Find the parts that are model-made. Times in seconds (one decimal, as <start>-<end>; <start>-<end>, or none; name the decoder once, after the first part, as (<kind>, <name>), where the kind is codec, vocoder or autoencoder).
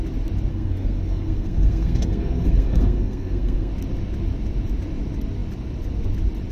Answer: 0.5-3.7 (codec, SNAC)